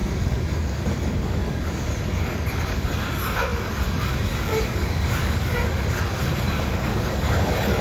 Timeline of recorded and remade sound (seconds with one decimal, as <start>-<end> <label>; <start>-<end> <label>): 0.0-7.8 remade